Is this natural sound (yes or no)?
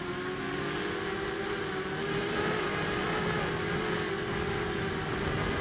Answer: yes